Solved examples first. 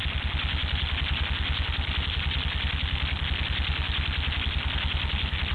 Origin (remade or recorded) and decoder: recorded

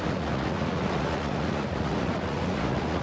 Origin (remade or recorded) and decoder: remade, vocoder, Vocos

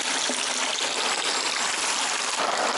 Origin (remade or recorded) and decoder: recorded